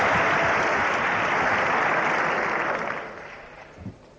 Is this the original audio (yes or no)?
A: yes